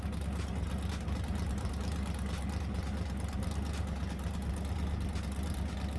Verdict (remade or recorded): recorded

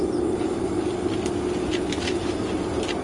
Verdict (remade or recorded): recorded